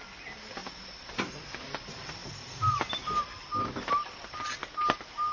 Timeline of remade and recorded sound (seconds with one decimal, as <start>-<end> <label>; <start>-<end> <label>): 0.0-5.3 recorded